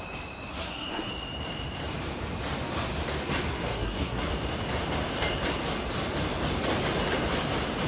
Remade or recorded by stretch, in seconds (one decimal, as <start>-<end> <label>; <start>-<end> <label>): 0.0-0.5 recorded; 0.5-1.1 remade; 1.1-3.5 recorded; 3.5-4.3 remade; 4.3-7.9 recorded